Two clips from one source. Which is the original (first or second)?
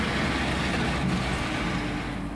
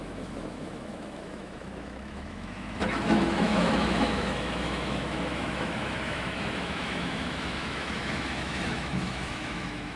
first